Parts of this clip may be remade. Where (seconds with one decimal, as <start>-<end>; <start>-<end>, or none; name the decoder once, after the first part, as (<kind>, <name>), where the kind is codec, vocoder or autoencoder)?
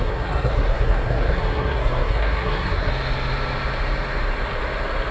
0.0-2.9 (codec, SNAC)